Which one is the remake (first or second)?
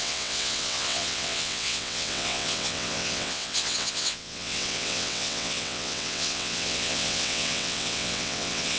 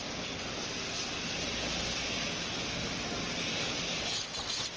first